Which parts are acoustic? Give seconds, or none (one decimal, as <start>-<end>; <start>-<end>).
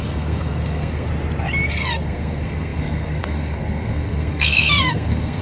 1.1-1.7